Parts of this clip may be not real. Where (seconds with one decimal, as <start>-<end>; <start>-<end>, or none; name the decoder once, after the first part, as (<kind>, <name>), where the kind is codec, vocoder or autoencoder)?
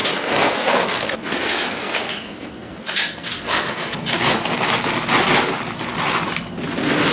0.0-4.3 (codec, SNAC)